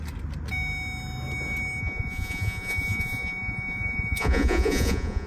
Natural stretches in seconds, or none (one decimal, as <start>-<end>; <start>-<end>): 0.0-1.8